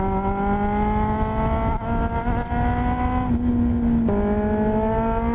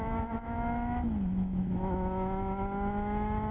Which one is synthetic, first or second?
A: second